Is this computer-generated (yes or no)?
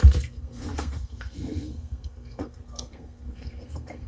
yes